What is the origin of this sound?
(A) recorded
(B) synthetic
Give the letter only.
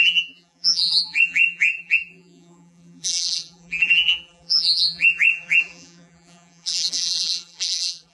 B